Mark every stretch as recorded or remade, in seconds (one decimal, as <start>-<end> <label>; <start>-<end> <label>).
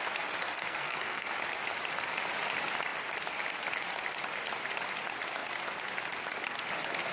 0.0-0.4 recorded; 0.4-1.3 remade; 1.3-7.1 recorded